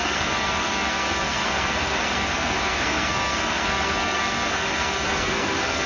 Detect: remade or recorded remade